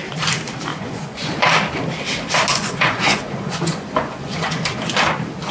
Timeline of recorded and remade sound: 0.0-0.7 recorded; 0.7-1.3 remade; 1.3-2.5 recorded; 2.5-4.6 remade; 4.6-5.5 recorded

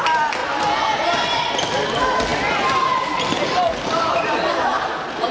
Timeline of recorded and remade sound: 0.0-0.4 recorded; 0.4-1.4 remade; 1.4-5.3 recorded

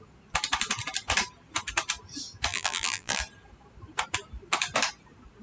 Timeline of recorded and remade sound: 0.0-2.5 recorded; 2.5-3.2 remade; 3.2-5.4 recorded

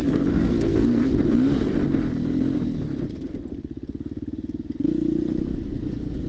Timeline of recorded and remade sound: 0.0-1.1 remade; 1.1-6.3 recorded

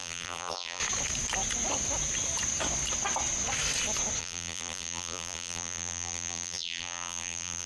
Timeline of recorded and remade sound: 0.0-0.8 remade; 0.8-4.2 recorded; 4.2-7.7 remade

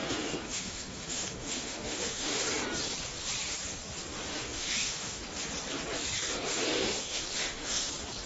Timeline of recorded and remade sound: 0.0-2.4 remade; 2.4-4.3 recorded; 4.3-5.2 remade; 5.2-6.5 recorded; 6.5-7.9 remade; 7.9-8.3 recorded

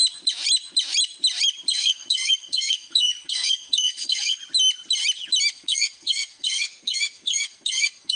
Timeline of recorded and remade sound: 0.0-1.7 recorded; 1.7-4.4 remade; 4.4-5.5 recorded; 5.5-8.2 remade

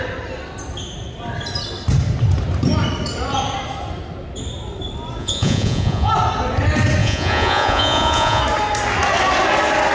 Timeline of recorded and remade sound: 0.0-5.2 recorded; 5.2-6.1 remade; 6.1-7.0 recorded; 7.0-8.4 remade; 8.4-9.9 recorded